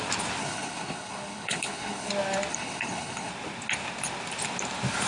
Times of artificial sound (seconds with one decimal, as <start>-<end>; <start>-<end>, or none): 0.4-2.1; 2.5-3.3